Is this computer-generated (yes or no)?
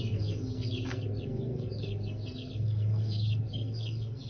yes